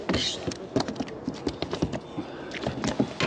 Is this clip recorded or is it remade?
recorded